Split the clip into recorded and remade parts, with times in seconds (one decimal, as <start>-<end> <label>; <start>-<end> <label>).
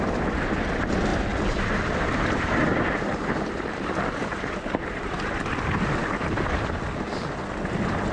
0.0-4.2 recorded; 4.2-5.4 remade; 5.4-8.1 recorded